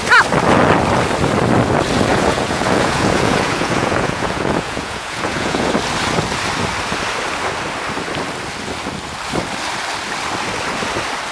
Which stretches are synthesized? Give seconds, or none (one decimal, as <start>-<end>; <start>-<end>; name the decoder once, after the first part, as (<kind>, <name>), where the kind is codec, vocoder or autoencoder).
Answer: 2.1-5.7 (vocoder, Vocos)